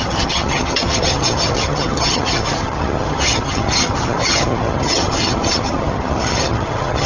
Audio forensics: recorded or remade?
remade